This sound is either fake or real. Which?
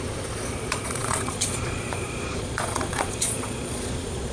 fake